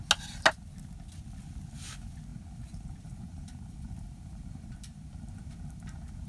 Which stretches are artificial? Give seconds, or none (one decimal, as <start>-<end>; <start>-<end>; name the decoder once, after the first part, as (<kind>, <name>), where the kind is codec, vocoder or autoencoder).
2.3-6.3 (vocoder, BigVGAN v2)